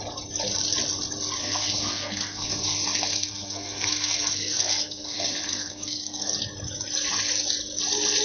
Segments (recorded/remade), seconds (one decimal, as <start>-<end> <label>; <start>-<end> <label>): 0.0-1.4 recorded; 1.4-6.3 remade; 6.3-8.2 recorded